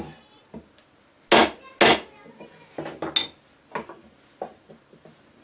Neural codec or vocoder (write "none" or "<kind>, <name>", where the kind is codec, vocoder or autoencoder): none